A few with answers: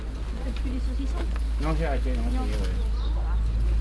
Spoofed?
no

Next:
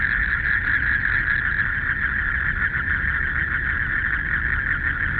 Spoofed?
no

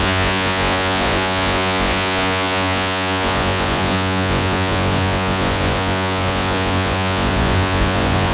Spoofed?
yes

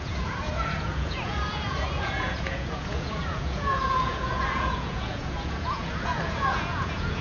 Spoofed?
yes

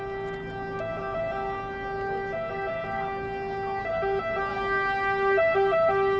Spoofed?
no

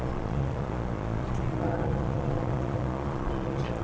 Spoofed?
yes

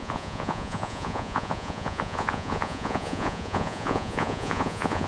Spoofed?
yes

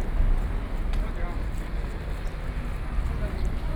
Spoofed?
no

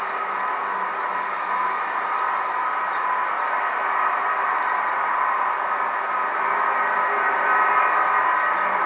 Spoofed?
no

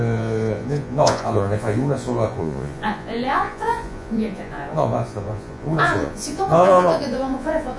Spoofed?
yes